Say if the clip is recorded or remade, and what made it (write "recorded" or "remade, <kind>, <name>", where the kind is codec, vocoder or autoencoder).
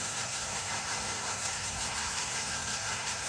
remade, codec, SNAC